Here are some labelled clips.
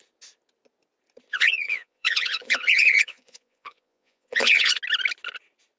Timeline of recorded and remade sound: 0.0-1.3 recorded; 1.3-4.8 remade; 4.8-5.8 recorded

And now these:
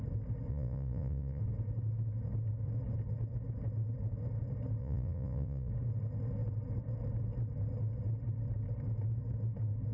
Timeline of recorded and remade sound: 0.0-0.5 recorded; 0.5-1.4 remade; 1.4-4.8 recorded; 4.8-5.7 remade; 5.7-9.9 recorded

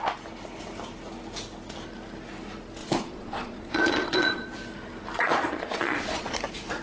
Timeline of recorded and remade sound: 0.0-2.8 recorded; 2.8-4.5 remade; 4.5-5.2 recorded; 5.2-6.3 remade; 6.3-6.8 recorded

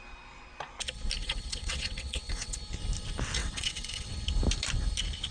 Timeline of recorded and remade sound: 0.0-1.2 recorded; 1.2-2.6 remade; 2.6-3.4 recorded; 3.4-4.1 remade; 4.1-5.3 recorded

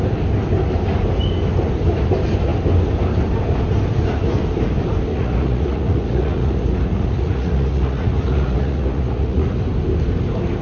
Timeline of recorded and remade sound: 0.0-5.1 recorded; 5.1-9.6 remade; 9.6-10.6 recorded

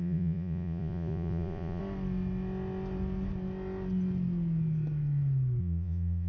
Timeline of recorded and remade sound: 0.0-1.8 remade; 1.8-5.6 recorded; 5.6-6.3 remade

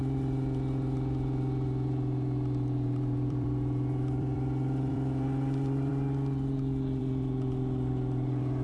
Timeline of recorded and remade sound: 0.0-5.9 remade; 5.9-7.0 recorded; 7.0-8.6 remade

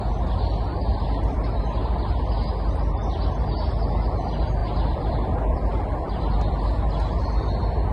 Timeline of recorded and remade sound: 0.0-0.9 recorded; 0.9-1.6 remade; 1.6-4.6 recorded; 4.6-6.6 remade; 6.6-7.9 recorded